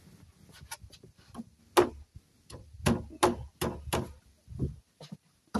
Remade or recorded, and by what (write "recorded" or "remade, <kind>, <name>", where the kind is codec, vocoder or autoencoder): recorded